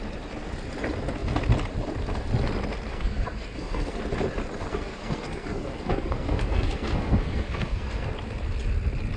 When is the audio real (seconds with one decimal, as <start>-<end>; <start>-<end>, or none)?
0.0-2.9; 4.0-4.7; 8.1-9.2